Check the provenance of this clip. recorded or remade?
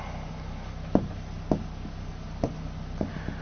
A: recorded